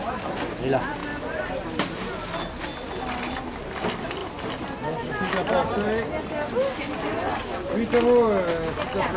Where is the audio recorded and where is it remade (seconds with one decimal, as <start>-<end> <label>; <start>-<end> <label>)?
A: 0.0-9.2 recorded